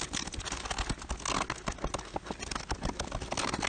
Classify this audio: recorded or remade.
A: recorded